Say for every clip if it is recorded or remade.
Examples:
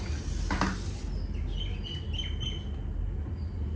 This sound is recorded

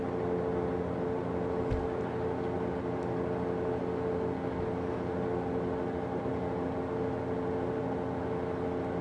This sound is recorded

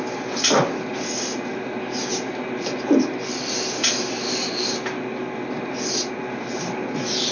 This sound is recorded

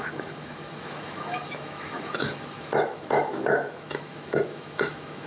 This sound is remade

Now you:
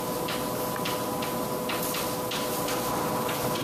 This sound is recorded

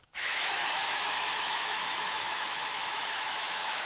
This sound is remade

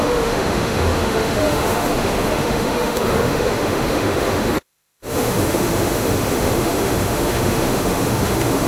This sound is remade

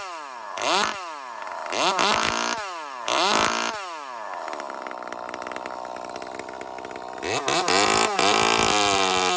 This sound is recorded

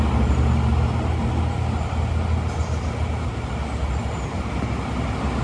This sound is recorded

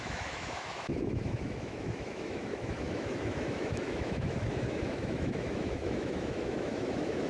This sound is remade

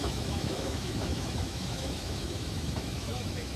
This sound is remade